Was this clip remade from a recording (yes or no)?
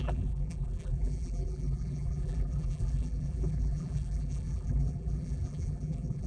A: yes